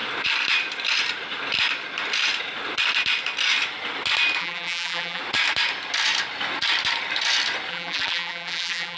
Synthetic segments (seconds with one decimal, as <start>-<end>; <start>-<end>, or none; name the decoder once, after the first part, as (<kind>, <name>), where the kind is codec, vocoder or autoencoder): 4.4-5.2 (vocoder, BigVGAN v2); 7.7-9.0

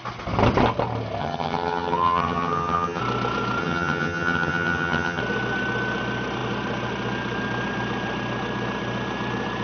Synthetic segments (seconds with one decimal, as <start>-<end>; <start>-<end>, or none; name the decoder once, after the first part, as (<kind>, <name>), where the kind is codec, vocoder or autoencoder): 1.2-3.0 (vocoder, HiFi-GAN); 3.6-5.2

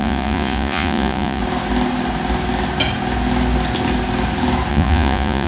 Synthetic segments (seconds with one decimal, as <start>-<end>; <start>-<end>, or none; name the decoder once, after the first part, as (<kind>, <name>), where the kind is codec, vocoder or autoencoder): 0.0-1.4 (vocoder, Vocos); 4.7-5.5

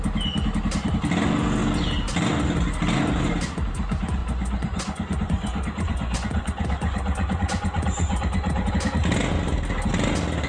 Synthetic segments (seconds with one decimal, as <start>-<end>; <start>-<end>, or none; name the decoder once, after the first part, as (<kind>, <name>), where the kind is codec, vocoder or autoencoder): 4.2-8.7 (vocoder, Vocos)